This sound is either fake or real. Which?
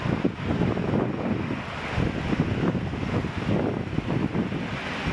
real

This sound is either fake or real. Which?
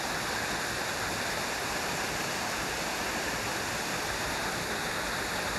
fake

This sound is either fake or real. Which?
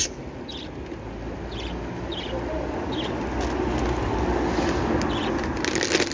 real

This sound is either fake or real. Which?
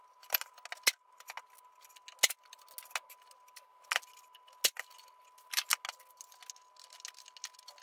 real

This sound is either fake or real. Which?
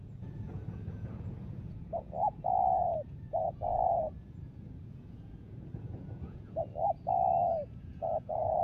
fake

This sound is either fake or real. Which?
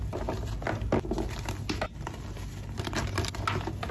real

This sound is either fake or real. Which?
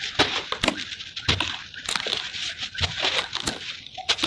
real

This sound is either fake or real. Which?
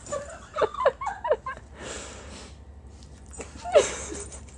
real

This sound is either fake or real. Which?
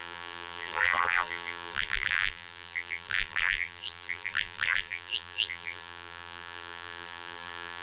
fake